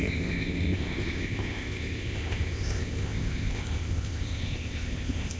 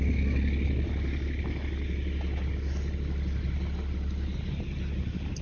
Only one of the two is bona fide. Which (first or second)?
second